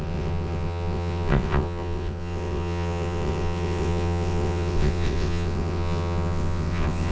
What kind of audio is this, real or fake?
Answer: fake